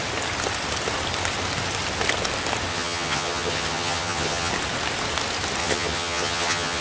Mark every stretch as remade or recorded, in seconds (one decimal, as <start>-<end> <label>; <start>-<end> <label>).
0.0-2.7 recorded; 2.7-4.5 remade; 4.5-5.6 recorded; 5.6-6.8 remade